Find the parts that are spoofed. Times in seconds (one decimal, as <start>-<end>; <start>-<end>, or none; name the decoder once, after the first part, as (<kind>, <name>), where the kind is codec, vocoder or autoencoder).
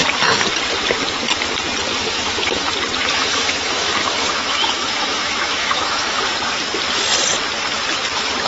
1.9-2.7 (autoencoder, DAC-VAE); 3.1-6.2